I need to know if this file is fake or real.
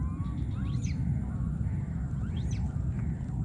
real